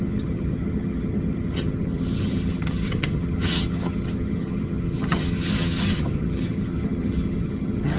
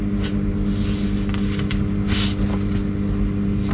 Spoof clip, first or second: first